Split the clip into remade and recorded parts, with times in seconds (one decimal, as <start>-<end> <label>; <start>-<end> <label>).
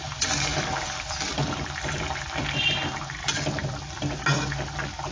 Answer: 0.0-0.5 recorded; 0.5-2.7 remade; 2.7-3.2 recorded; 3.2-4.2 remade; 4.2-5.1 recorded